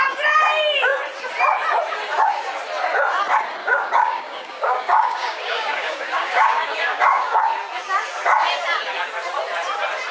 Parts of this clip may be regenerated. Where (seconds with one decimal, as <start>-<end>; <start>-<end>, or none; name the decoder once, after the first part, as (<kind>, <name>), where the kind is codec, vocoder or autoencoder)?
3.6-7.4 (codec, DAC)